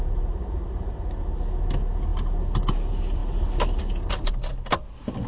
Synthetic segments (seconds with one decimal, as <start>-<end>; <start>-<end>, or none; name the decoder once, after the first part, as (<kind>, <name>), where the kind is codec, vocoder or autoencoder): none